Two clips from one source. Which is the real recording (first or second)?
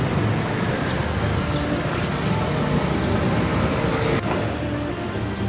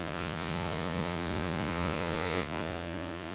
first